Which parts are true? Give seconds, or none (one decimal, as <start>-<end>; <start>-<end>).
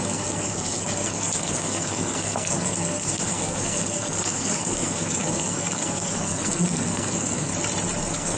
7.5-8.0